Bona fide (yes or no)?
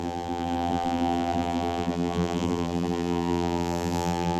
no